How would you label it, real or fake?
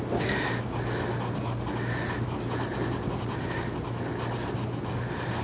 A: real